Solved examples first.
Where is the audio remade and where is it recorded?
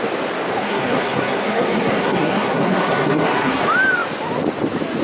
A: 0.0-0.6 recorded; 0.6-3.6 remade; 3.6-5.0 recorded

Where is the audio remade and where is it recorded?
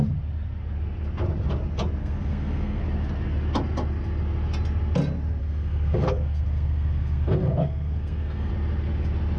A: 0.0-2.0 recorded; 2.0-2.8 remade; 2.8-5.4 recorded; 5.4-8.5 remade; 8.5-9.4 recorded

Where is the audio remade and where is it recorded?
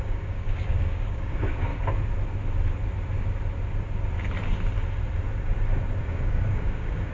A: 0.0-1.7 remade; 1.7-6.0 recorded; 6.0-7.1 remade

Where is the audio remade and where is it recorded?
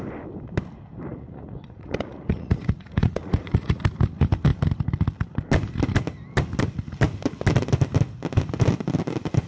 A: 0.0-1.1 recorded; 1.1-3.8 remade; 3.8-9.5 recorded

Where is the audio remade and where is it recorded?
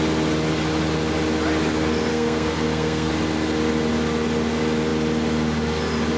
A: 0.0-2.1 recorded; 2.1-3.1 remade; 3.1-6.2 recorded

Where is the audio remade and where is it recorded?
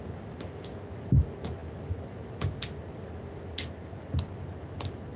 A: 0.0-5.2 recorded